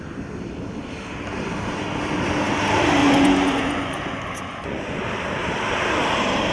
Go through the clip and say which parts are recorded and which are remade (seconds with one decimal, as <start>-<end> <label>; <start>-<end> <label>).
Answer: 0.0-3.0 recorded; 3.0-5.0 remade; 5.0-6.5 recorded